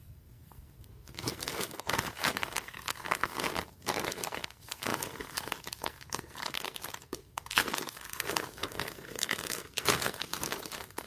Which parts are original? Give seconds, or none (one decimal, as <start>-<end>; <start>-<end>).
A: none